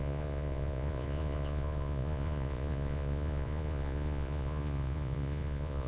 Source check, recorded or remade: remade